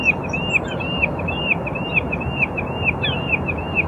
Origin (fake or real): real